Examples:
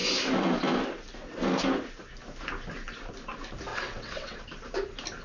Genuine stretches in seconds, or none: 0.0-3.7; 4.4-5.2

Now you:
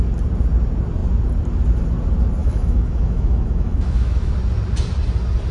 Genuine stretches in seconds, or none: 0.0-2.4; 4.3-5.5

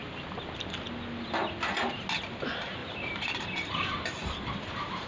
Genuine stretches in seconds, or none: 0.0-2.8

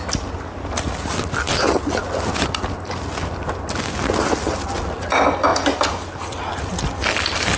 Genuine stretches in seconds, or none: 0.0-7.6

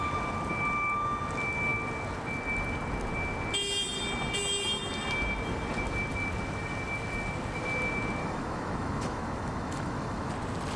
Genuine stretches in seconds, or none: 0.0-8.2; 10.3-10.8

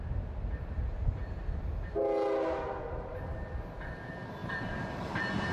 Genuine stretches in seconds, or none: 0.0-4.4